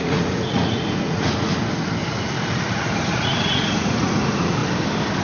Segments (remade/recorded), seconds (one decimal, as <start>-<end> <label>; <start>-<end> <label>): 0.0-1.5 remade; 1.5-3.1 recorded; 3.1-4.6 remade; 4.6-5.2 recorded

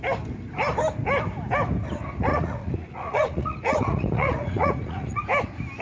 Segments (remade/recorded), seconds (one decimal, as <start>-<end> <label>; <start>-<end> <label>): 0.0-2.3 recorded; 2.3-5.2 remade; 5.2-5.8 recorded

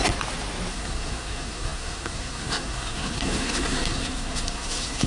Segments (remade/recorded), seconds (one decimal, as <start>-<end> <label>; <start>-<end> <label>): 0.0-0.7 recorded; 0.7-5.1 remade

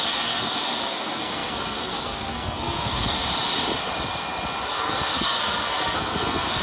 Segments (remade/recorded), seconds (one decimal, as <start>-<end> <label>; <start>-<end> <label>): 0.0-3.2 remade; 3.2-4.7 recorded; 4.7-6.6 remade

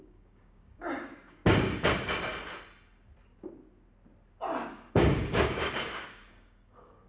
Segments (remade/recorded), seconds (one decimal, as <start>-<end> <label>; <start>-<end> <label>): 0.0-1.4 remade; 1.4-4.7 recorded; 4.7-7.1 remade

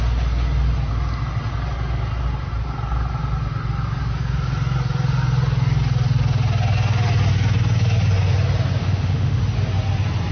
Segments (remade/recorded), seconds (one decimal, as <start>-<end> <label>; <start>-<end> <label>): 0.0-8.8 recorded; 8.8-9.4 remade; 9.4-10.3 recorded

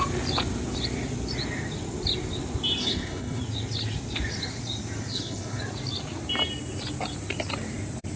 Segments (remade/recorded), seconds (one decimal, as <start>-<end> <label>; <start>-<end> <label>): 0.0-2.8 recorded; 2.8-3.4 remade; 3.4-5.1 recorded; 5.1-5.6 remade; 5.6-8.2 recorded